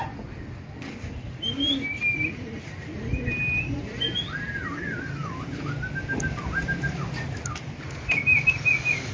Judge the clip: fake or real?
real